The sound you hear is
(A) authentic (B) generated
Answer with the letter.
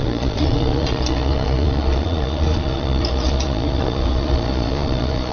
B